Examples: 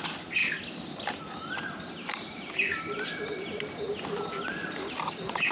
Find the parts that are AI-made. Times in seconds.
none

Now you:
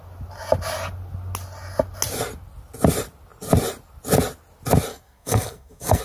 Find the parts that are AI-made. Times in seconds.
4.9-6.0

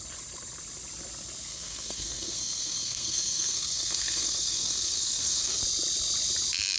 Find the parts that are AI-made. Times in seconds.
1.5-5.6

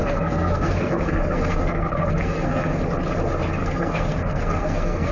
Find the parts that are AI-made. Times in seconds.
0.0-2.8; 3.6-5.1

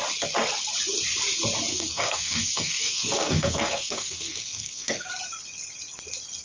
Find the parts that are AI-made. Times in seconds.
1.7-5.1

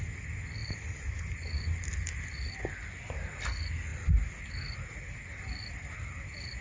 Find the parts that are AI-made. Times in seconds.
none

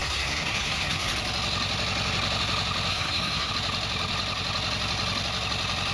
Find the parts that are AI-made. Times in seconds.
0.0-1.1; 2.9-3.5